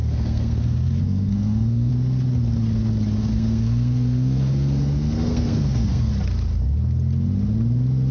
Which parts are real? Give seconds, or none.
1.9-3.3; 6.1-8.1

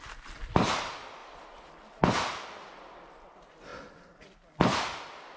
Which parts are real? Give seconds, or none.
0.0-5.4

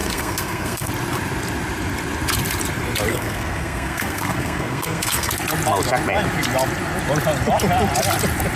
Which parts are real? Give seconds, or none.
0.9-3.1; 5.3-8.6

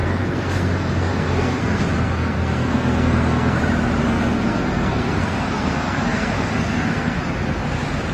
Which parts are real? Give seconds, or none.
3.6-4.0; 7.2-8.1

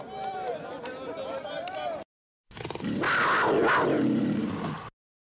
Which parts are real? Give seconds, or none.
0.0-5.2